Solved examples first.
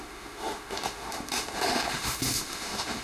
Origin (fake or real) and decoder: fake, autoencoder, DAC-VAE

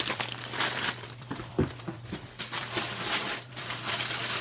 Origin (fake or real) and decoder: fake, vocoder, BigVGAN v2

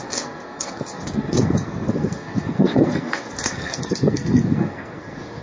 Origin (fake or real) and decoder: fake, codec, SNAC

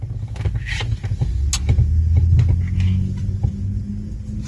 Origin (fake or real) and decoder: real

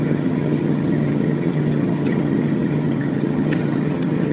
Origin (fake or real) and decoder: fake, vocoder, HiFi-GAN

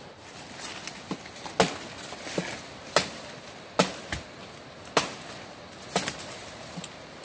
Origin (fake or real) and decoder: real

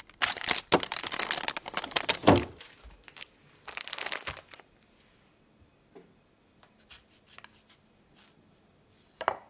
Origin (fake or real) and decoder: real